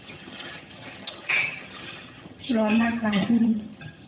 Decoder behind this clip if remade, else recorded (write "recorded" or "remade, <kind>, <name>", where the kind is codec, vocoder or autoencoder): remade, vocoder, HiFi-GAN